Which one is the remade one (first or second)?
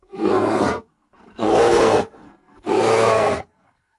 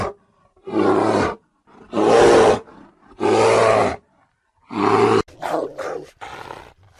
first